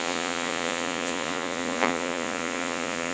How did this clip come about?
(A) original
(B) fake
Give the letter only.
B